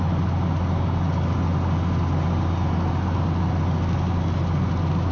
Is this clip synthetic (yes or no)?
no